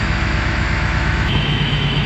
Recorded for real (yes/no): no